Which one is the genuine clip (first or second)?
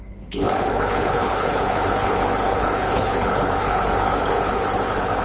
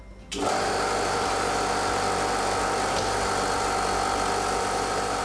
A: second